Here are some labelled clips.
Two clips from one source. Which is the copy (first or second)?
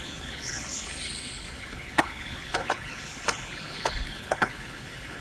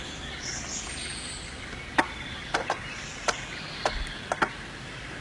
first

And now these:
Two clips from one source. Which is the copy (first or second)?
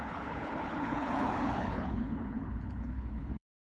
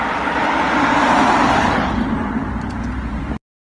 first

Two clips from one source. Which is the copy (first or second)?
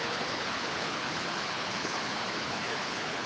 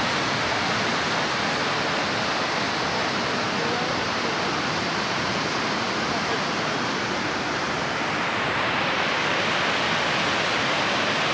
first